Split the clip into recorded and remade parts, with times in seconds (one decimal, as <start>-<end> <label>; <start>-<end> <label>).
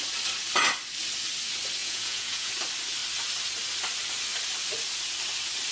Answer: 0.0-1.8 recorded; 1.8-2.5 remade; 2.5-5.7 recorded